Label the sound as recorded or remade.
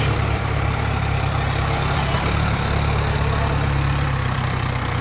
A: remade